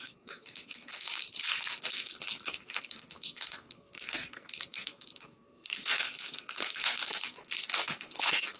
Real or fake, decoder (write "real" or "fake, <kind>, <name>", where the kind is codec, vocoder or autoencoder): fake, codec, SNAC